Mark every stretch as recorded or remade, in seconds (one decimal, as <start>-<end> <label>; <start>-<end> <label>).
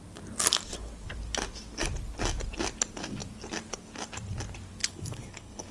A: 0.0-4.8 recorded; 4.8-5.7 remade